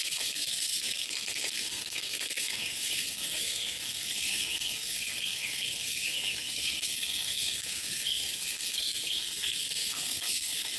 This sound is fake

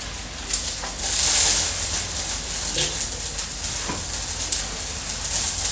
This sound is real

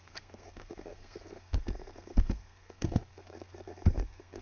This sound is fake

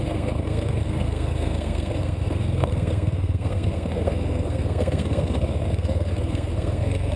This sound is fake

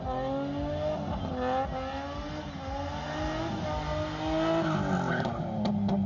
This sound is real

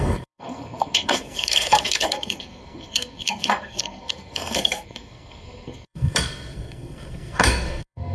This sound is fake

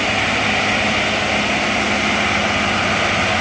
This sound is real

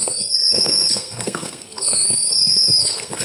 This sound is fake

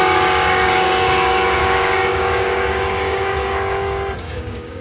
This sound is fake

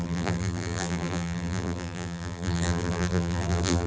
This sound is fake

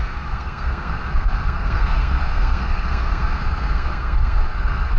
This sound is fake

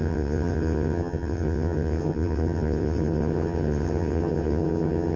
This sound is fake